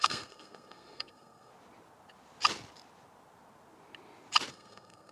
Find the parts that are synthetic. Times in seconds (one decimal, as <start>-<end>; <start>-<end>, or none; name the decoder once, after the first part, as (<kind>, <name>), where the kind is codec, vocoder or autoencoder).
0.0-1.5 (codec, SNAC); 4.5-5.1

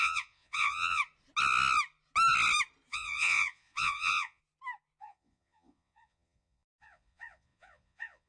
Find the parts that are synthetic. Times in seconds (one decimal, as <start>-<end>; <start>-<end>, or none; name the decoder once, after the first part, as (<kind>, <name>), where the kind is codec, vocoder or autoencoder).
0.0-1.0 (vocoder, Vocos); 2.9-4.4; 5.0-8.3

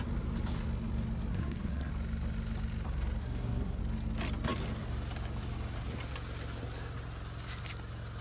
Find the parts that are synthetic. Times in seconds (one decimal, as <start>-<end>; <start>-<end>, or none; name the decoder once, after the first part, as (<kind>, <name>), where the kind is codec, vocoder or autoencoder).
1.3-1.9 (codec, SNAC); 3.2-3.8